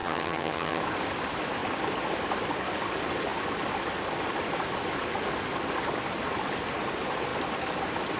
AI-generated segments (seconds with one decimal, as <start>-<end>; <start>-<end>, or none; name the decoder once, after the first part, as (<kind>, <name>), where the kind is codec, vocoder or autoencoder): 0.0-0.8 (vocoder, HiFi-GAN)